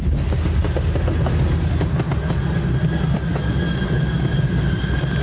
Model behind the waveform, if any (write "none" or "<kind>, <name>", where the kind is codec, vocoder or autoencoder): none